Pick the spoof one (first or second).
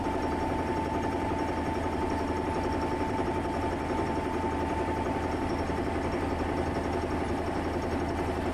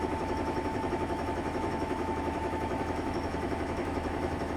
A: second